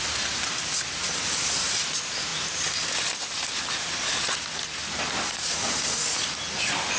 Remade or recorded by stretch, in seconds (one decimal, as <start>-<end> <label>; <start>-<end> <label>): 0.0-7.0 recorded